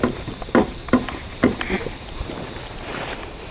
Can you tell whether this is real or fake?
real